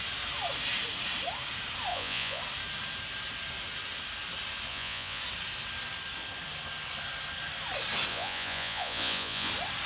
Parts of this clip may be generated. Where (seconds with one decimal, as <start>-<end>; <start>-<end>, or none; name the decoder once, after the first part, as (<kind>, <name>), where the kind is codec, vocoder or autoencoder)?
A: 1.9-2.4 (vocoder, Vocos); 4.7-5.2; 8.1-9.5